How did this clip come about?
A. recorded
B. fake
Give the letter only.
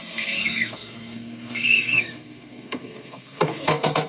B